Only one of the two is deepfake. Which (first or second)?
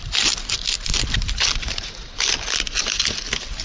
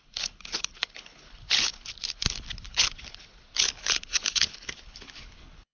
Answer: second